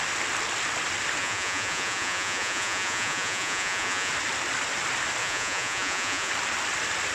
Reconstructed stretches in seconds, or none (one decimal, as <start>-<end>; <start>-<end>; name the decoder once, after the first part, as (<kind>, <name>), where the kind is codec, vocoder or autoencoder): 1.2-4.1 (vocoder, Vocos); 5.2-6.3